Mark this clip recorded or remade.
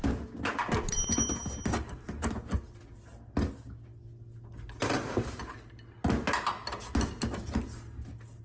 recorded